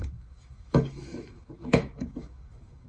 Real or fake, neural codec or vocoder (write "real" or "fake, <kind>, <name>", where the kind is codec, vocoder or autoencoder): fake, autoencoder, DAC-VAE